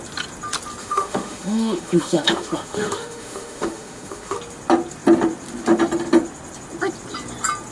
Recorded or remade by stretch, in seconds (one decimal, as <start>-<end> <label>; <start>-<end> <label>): 0.0-0.8 recorded; 0.8-4.4 remade; 4.4-7.7 recorded